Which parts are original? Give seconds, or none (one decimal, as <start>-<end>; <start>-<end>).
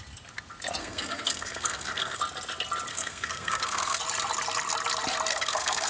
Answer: 0.0-0.8; 2.2-2.9; 4.0-5.3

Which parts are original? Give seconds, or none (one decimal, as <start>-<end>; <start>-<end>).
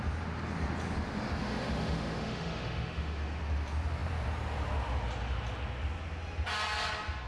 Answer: 0.0-1.4; 3.4-7.3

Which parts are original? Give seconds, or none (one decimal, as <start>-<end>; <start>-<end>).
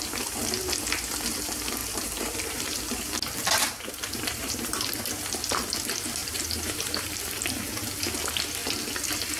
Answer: 0.0-1.8; 2.8-3.4; 5.7-6.2; 8.0-9.4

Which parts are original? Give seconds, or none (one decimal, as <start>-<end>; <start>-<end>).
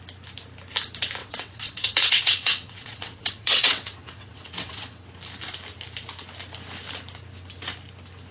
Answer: 0.0-1.2; 5.1-8.3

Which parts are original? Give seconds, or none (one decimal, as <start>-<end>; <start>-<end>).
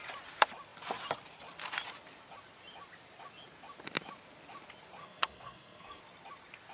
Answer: 0.0-5.0; 6.0-6.7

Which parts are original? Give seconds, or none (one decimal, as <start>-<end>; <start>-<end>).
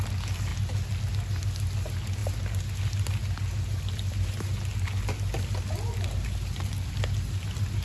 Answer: 0.0-7.8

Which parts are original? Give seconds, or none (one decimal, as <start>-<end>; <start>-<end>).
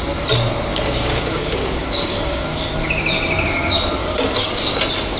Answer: 0.0-0.7; 2.7-4.0; 4.7-5.2